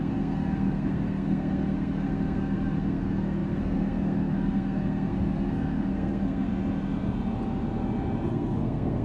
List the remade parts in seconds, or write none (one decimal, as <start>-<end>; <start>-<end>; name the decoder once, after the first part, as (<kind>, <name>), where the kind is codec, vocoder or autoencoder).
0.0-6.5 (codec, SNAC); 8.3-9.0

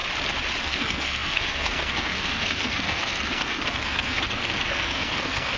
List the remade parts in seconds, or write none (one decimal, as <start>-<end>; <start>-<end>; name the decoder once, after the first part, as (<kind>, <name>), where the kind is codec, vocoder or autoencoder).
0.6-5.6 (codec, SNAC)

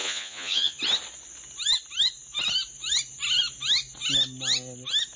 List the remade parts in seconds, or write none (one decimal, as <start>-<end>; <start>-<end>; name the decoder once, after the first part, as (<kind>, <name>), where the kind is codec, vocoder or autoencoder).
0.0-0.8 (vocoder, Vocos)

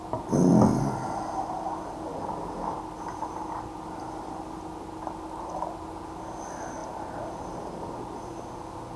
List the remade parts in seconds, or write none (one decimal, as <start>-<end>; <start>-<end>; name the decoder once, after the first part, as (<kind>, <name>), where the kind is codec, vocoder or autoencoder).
none

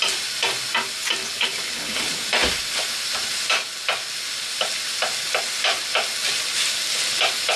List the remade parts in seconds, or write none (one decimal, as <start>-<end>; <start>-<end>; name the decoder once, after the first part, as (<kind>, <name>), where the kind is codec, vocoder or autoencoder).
1.2-2.0 (codec, HILCodec)

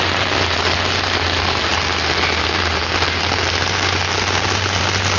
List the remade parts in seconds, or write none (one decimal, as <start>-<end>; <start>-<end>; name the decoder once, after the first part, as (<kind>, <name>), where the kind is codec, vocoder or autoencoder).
none

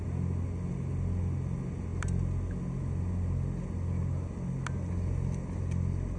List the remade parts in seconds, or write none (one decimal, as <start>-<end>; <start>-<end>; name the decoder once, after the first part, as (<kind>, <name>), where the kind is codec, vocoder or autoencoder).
none